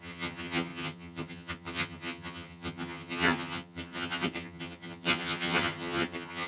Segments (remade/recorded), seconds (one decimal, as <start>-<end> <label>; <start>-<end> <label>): 0.0-6.5 remade